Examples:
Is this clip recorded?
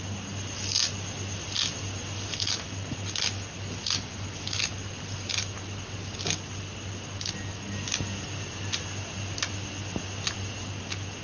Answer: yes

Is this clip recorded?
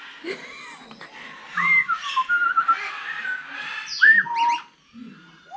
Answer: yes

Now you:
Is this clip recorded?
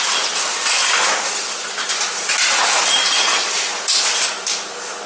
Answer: yes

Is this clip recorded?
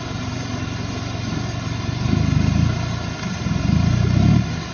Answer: yes